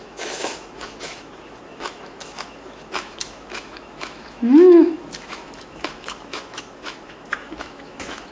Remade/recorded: remade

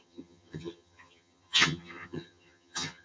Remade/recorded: remade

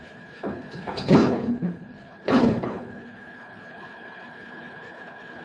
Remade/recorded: remade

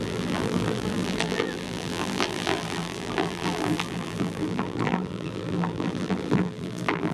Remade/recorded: remade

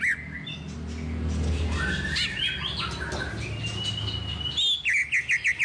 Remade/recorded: recorded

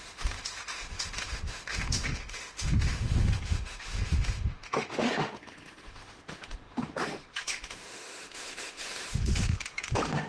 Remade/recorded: remade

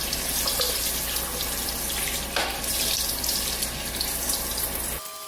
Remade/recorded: recorded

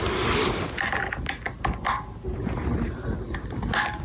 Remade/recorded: recorded